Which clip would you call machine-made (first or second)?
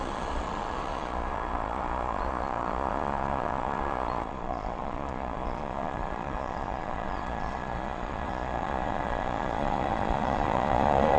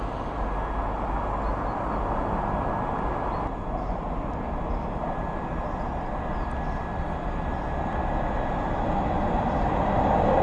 first